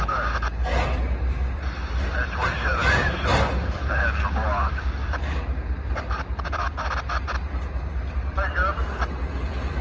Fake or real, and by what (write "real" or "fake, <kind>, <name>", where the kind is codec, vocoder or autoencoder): real